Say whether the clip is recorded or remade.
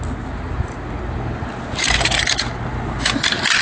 recorded